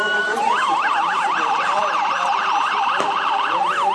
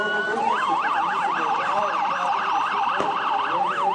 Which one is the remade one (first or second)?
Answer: first